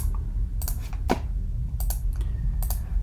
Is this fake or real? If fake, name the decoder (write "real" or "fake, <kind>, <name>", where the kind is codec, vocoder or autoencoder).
real